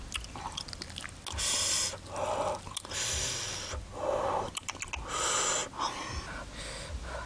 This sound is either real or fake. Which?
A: real